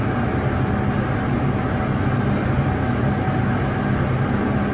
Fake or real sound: real